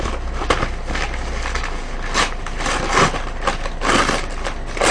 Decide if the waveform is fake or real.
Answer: real